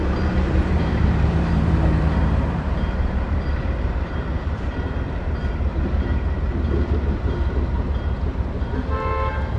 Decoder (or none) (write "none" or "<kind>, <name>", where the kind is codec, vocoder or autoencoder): vocoder, BigVGAN v2